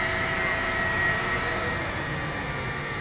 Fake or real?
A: real